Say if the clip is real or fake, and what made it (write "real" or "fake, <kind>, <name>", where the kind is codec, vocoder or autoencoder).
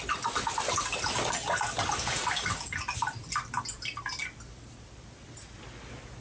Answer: real